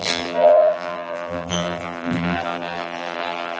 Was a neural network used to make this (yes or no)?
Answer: yes